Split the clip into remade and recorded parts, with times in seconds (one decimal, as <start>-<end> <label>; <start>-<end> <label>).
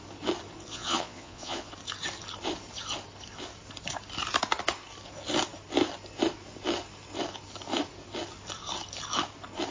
0.0-0.7 recorded; 0.7-1.7 remade; 1.7-9.7 recorded